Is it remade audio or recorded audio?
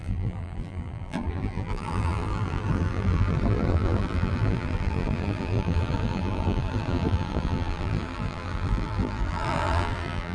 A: remade